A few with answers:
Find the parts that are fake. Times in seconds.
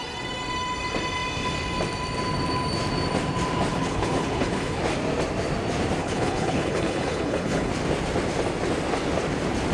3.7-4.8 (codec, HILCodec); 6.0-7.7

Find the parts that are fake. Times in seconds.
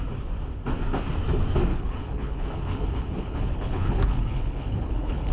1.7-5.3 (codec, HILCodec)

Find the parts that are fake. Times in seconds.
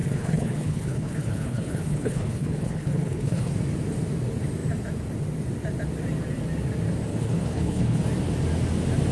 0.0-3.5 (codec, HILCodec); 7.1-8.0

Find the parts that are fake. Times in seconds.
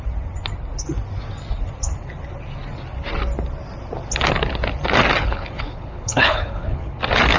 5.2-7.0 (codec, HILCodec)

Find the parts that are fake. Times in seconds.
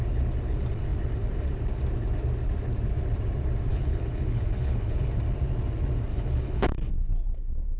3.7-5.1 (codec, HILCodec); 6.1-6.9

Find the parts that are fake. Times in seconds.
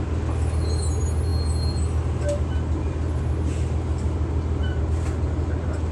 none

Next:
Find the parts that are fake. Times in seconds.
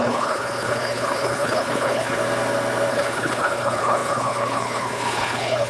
0.0-2.2 (codec, HILCodec); 2.9-5.7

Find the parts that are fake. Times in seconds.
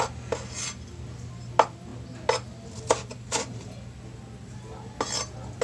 none